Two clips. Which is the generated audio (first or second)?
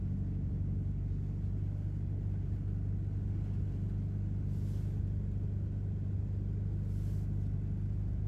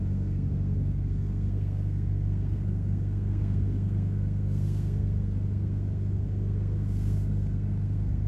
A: second